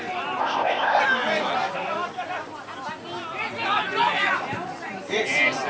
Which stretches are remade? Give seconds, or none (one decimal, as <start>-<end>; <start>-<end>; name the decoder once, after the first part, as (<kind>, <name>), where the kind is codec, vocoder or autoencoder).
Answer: 0.4-1.0 (codec, ZipCodec)